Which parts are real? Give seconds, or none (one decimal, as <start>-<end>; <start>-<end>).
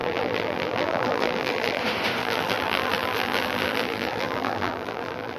1.8-2.2